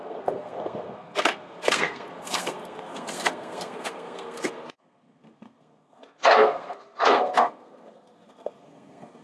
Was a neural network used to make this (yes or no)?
yes